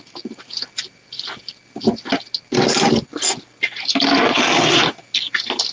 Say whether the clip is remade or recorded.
recorded